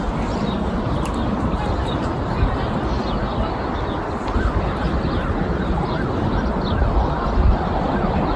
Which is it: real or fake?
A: real